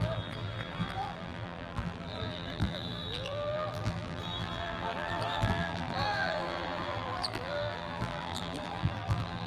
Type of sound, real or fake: fake